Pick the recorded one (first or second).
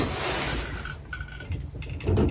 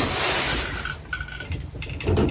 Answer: first